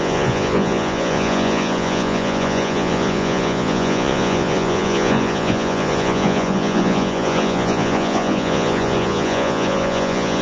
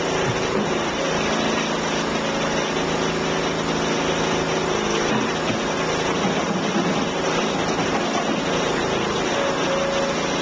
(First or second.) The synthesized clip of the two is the first